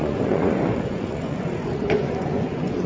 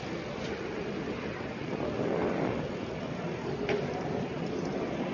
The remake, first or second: first